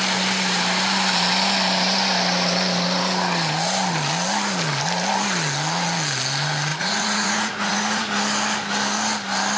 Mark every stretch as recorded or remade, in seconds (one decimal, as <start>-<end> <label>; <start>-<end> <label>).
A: 0.0-6.7 recorded; 6.7-8.1 remade; 8.1-9.6 recorded